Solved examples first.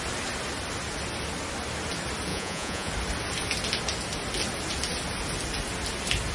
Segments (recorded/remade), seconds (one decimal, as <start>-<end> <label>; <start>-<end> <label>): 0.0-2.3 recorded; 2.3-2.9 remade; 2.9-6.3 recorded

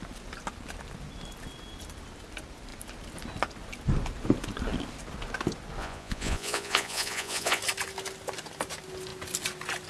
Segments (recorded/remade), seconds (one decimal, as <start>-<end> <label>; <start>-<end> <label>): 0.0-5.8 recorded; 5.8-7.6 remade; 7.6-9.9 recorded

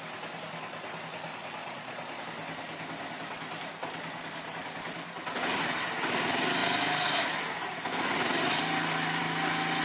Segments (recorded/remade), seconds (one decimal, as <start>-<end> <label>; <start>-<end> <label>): 0.0-1.6 recorded; 1.6-2.2 remade; 2.2-9.8 recorded

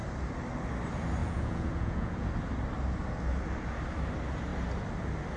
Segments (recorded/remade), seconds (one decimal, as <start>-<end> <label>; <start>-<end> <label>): 0.0-1.2 recorded; 1.2-2.3 remade; 2.3-5.4 recorded

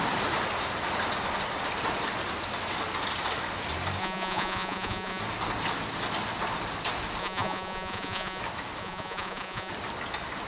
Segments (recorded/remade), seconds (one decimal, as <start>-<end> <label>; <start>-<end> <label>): 0.0-4.0 recorded; 4.0-5.2 remade; 5.2-7.2 recorded; 7.2-8.4 remade; 8.4-8.8 recorded; 8.8-9.7 remade; 9.7-10.5 recorded